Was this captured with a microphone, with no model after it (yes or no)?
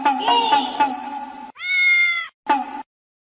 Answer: yes